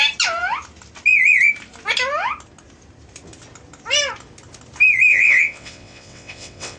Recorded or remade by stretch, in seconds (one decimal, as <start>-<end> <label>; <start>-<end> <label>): 0.0-5.1 recorded; 5.1-6.8 remade